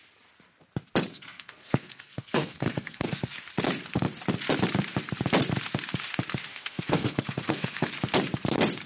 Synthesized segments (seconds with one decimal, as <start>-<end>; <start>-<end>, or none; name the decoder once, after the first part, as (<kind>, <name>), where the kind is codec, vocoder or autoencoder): 1.1-3.3 (codec, SNAC); 6.5-7.9

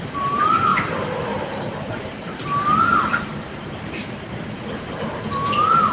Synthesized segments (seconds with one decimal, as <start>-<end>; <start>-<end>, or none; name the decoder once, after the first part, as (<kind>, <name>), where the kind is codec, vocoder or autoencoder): none